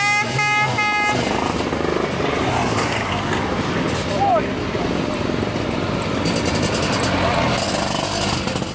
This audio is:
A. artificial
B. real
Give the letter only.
B